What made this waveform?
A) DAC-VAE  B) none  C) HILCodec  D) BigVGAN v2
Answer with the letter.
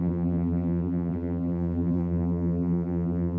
D